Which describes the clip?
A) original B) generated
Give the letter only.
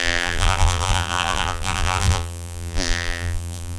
B